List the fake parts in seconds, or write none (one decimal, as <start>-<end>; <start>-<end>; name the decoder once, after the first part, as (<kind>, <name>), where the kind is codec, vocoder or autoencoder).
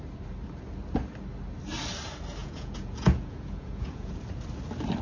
2.4-4.2 (vocoder, Vocos)